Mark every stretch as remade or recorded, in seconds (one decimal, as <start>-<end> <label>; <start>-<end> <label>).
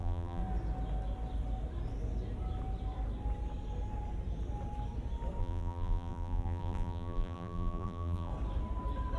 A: 0.0-0.4 remade; 0.4-5.4 recorded; 5.4-8.3 remade; 8.3-9.2 recorded